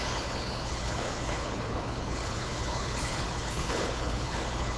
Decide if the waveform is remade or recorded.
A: remade